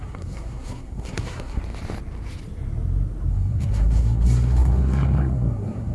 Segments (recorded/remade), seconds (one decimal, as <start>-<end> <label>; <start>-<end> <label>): 0.0-1.6 remade; 1.6-3.3 recorded; 3.3-5.9 remade